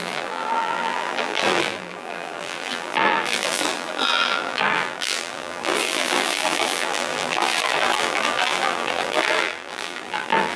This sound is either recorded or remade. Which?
remade